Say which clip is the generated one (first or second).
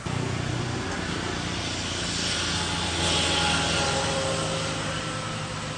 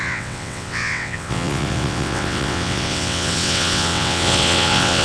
second